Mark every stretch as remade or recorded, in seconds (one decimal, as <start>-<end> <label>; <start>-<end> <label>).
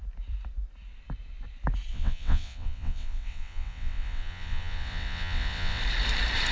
0.0-1.9 recorded; 1.9-5.8 remade; 5.8-6.5 recorded